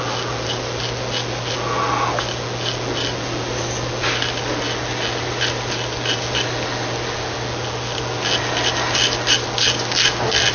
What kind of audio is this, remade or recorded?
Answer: recorded